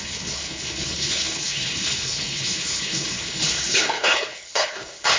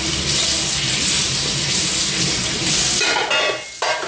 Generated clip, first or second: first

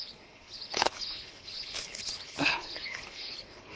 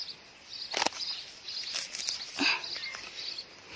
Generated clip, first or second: first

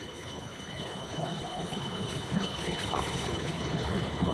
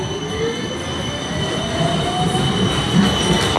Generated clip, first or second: first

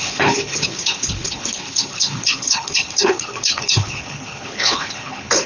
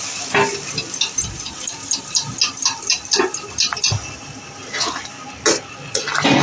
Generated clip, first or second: first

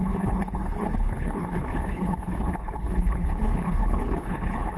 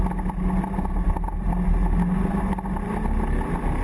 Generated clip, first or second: first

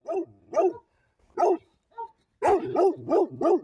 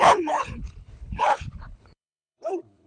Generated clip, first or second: second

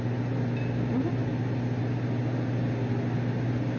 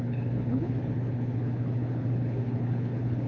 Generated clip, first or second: second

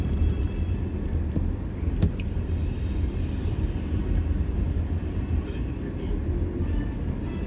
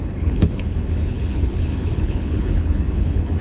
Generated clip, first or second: second